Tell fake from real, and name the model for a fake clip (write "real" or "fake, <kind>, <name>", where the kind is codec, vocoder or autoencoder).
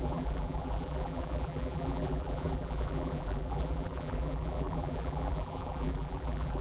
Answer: fake, vocoder, BigVGAN v2